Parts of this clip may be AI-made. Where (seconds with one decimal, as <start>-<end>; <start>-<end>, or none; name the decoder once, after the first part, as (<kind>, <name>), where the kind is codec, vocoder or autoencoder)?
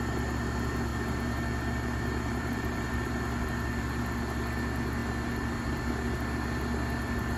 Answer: 0.9-3.2 (vocoder, BigVGAN v2)